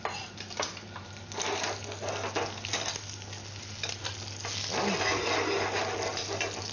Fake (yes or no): no